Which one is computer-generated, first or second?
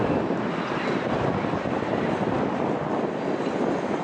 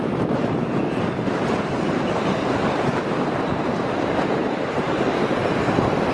second